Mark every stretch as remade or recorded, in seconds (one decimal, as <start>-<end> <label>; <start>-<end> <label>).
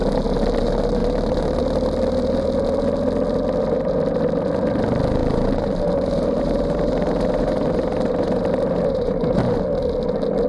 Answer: 0.0-5.2 recorded; 5.2-9.6 remade; 9.6-10.5 recorded